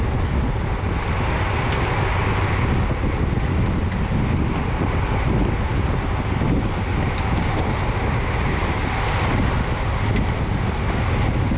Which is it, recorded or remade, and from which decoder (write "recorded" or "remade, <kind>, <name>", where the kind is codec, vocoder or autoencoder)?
recorded